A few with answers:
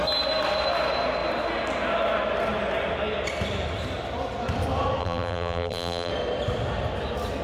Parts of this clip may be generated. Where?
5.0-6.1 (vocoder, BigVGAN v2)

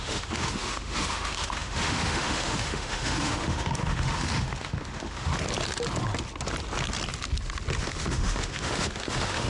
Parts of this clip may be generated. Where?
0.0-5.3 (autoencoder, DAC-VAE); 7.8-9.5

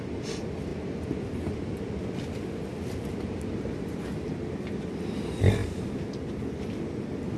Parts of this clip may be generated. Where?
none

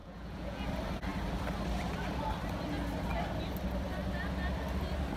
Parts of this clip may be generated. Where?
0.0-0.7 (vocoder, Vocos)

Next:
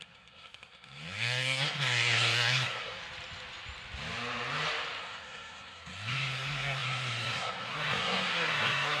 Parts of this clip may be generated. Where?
0.0-3.0 (codec, SNAC); 5.0-9.0